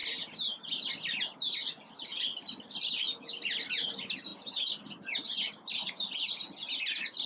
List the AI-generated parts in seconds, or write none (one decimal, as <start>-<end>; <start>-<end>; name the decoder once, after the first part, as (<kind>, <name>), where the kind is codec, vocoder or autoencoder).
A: 1.4-4.3 (vocoder, BigVGAN v2); 5.7-7.3